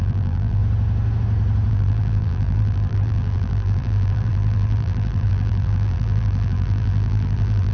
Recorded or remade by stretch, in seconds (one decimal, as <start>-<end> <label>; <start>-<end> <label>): 0.0-0.6 remade; 0.6-1.7 recorded; 1.7-7.7 remade